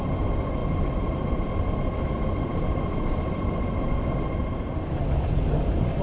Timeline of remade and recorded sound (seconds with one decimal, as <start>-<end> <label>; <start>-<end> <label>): 0.0-6.0 recorded